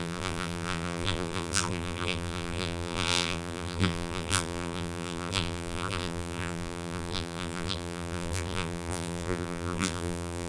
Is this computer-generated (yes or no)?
yes